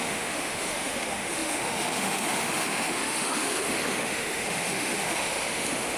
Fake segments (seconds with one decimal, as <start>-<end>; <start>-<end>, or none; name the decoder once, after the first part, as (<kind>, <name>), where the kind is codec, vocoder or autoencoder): 0.0-6.0 (autoencoder, DAC-VAE)